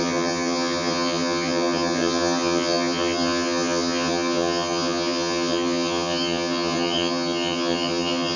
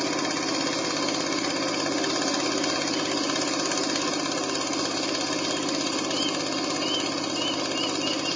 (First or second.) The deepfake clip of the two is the first